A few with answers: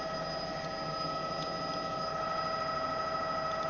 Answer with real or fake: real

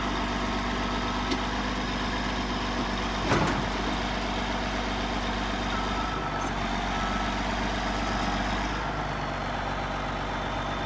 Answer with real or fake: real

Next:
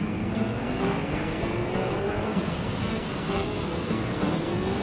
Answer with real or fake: fake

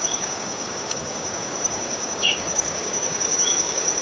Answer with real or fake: fake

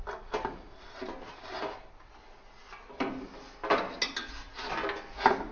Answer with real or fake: real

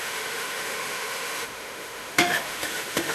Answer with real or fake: fake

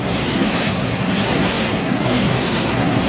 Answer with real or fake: fake